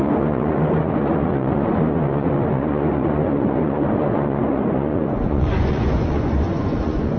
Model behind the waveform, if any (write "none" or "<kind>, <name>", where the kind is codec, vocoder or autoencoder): vocoder, Vocos